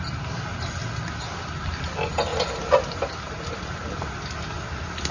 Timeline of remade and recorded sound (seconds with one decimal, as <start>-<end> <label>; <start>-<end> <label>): 0.0-5.1 recorded